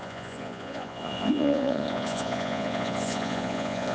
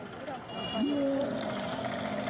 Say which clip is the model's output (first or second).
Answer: first